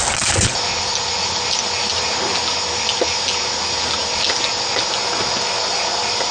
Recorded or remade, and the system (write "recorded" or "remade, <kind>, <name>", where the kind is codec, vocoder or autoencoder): recorded